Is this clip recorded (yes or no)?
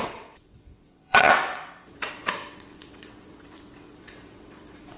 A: no